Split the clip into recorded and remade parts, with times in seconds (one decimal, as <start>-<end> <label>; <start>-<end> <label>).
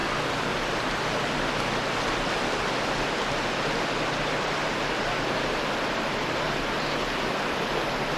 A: 0.0-8.2 recorded